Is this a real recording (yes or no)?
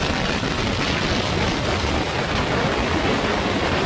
yes